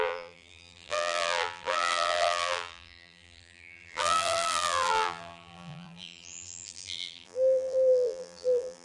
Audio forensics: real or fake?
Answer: fake